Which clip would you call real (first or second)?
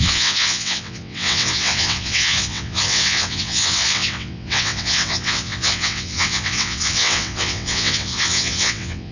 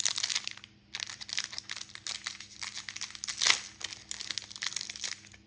second